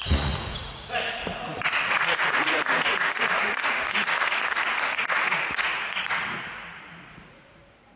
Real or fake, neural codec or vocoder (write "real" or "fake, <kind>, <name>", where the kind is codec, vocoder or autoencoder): fake, vocoder, Vocos